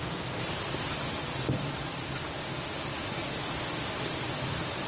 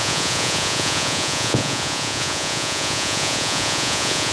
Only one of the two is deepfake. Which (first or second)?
second